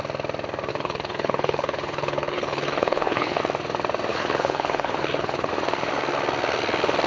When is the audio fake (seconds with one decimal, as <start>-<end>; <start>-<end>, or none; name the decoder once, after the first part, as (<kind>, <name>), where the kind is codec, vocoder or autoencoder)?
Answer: 0.7-3.4 (codec, HILCodec); 4.1-5.5